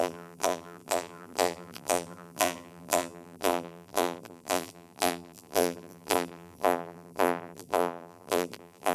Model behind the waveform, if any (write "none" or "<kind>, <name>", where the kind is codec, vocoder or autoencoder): vocoder, BigVGAN v2